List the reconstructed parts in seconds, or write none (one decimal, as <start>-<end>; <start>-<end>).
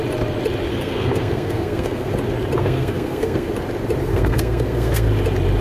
0.7-2.1; 2.6-3.5; 4.1-5.1